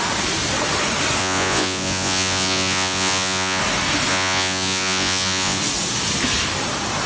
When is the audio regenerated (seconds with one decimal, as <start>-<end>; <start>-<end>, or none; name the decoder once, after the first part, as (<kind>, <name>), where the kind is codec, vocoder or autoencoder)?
1.2-3.6 (vocoder, Vocos); 4.1-5.6